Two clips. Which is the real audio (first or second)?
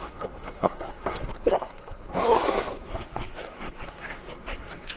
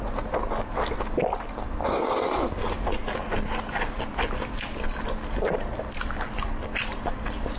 second